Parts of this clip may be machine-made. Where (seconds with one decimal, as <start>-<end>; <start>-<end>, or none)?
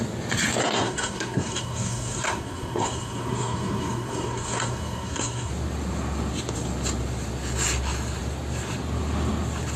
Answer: 0.6-5.5